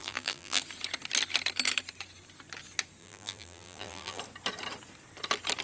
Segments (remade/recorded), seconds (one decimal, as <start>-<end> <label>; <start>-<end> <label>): 0.0-0.6 remade; 0.6-3.0 recorded; 3.0-4.2 remade; 4.2-5.6 recorded